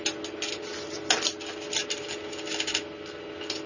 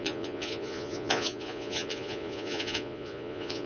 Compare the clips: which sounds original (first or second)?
first